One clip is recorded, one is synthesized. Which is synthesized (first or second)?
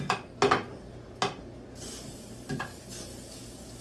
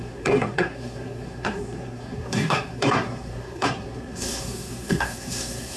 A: second